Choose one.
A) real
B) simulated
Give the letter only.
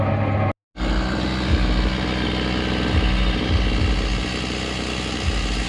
A